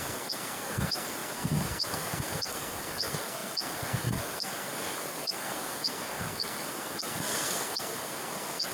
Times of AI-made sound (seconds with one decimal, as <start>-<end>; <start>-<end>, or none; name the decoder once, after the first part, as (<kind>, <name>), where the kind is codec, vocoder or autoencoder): 0.0-8.7 (codec, SNAC)